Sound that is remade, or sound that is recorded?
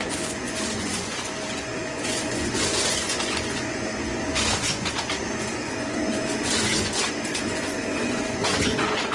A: remade